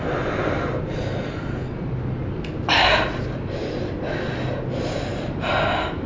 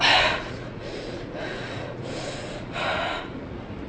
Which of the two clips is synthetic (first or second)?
second